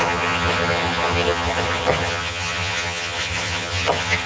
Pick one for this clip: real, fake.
fake